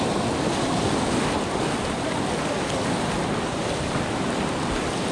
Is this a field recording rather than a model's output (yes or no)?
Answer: yes